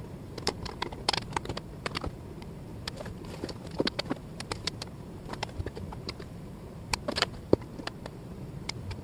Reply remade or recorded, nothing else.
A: remade